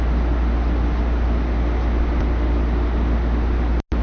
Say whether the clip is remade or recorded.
recorded